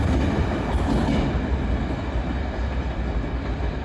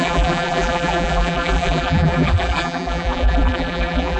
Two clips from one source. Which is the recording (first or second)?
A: first